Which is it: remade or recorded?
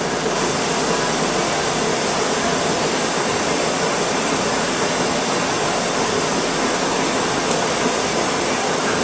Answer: recorded